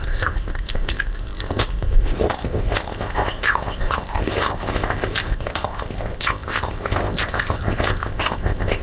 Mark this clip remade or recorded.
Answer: remade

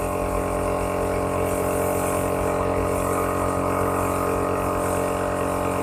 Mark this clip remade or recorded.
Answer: recorded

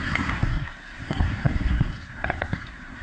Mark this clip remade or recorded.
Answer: remade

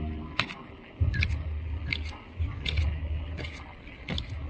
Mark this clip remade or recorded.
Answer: recorded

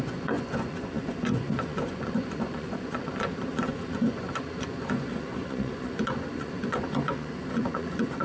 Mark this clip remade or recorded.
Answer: remade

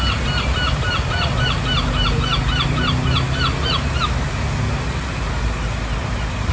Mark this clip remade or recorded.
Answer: recorded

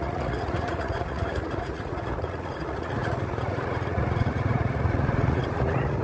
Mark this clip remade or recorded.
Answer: remade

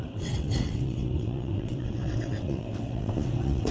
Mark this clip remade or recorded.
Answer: remade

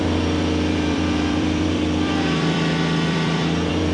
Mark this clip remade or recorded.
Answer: remade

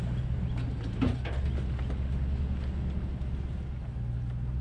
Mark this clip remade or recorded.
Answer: recorded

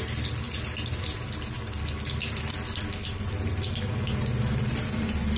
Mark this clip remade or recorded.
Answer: recorded